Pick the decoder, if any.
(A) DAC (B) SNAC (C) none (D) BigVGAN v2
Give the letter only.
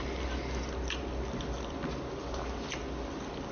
C